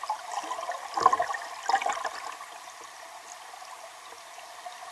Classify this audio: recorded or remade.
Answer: recorded